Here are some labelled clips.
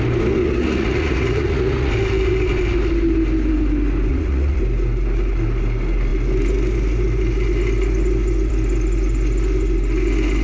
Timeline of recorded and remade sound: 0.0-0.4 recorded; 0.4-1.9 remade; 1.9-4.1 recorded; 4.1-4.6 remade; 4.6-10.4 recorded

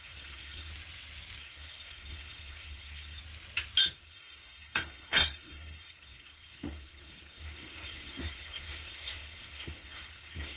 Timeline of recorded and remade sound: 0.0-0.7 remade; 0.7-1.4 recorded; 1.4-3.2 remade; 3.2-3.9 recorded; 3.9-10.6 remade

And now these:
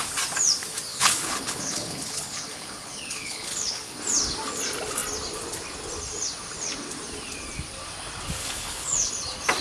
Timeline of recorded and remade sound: 0.0-0.9 recorded; 0.9-4.0 remade; 4.0-8.4 recorded; 8.4-9.1 remade; 9.1-9.6 recorded